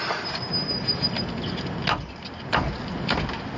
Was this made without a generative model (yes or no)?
yes